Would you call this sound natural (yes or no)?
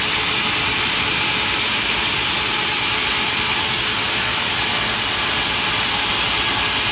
yes